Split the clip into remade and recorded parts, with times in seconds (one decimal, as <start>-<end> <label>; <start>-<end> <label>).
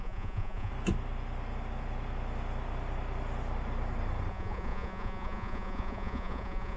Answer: 0.0-0.7 remade; 0.7-4.3 recorded; 4.3-6.8 remade